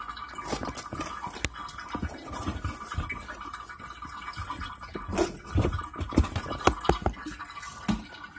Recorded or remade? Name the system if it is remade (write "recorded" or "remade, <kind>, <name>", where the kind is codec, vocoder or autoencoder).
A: recorded